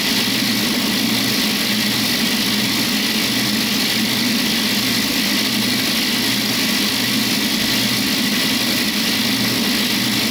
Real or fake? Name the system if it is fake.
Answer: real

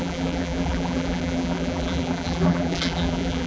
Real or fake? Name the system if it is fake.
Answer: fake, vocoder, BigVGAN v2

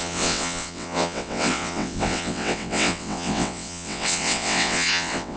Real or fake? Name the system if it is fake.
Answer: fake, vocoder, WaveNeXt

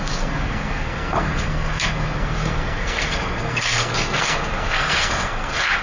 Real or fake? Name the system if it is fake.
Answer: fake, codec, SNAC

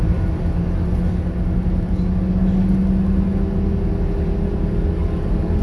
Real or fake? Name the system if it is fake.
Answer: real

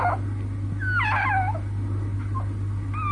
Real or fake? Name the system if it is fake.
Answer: real